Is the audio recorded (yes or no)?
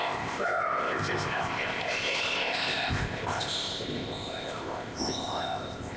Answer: no